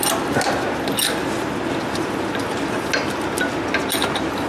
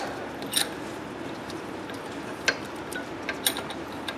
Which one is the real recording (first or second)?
first